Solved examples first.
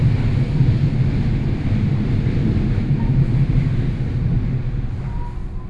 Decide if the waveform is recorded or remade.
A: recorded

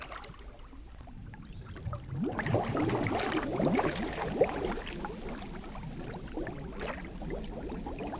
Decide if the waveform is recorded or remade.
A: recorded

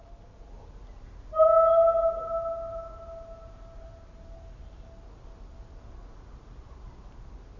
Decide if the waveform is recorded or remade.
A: recorded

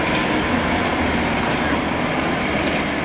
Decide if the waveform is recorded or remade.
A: recorded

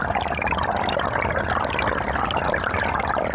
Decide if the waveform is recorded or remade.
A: recorded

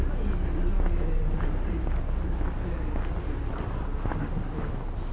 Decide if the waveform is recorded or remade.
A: recorded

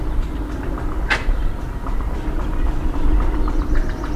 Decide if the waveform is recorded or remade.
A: recorded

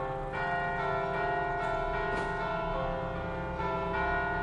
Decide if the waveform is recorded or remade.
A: recorded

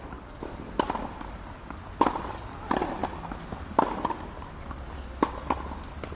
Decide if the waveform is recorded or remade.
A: recorded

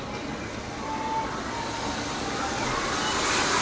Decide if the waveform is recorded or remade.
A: recorded